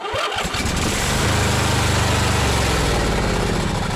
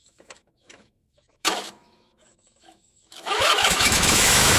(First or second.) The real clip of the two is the first